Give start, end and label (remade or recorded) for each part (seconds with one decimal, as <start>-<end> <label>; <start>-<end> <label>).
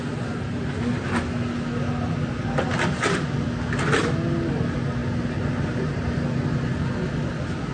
0.0-7.7 recorded